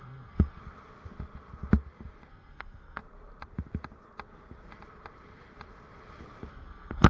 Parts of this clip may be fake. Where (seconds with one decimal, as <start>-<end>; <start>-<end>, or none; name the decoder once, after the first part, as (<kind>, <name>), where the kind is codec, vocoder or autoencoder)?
0.0-0.6 (codec, SNAC); 2.3-3.0; 6.5-7.1